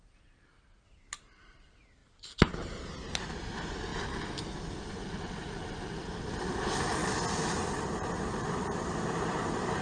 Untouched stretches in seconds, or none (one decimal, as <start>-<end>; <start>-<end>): 2.0-2.8; 3.9-4.9; 7.0-7.9